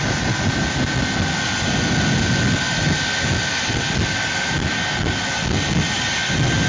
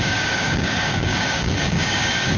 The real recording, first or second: first